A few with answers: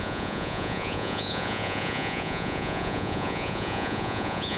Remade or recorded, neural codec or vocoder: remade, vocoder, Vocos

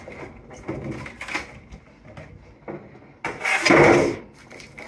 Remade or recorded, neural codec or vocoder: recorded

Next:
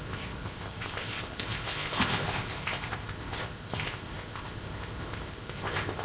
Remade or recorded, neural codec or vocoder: remade, codec, ZipCodec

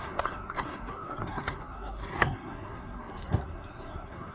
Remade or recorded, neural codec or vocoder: remade, codec, SNAC